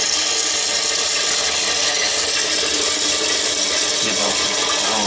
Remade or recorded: recorded